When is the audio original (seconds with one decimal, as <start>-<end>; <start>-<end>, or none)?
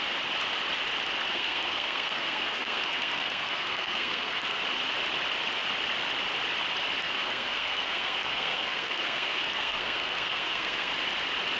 0.0-1.3; 4.6-7.0; 10.9-11.6